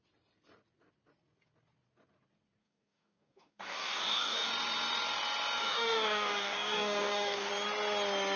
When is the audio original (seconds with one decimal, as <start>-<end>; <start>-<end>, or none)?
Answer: 0.0-2.6; 4.5-5.6; 7.5-8.4